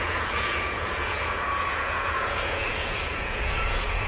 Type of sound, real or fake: fake